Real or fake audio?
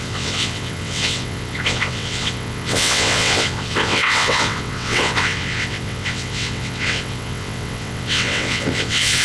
fake